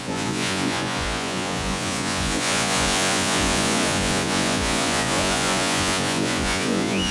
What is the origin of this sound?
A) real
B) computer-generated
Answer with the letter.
B